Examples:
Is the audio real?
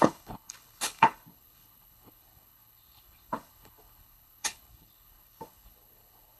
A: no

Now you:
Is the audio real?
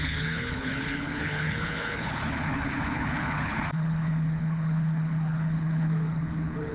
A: no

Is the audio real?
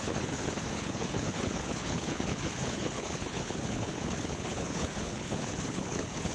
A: no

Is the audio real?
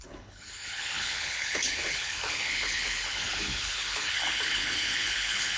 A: no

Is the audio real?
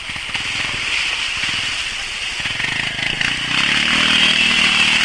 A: yes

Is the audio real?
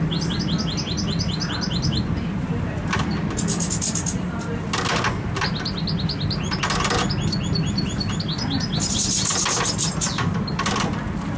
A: yes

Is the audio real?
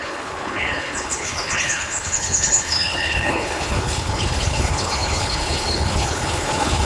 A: no